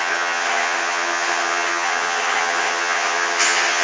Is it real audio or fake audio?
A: fake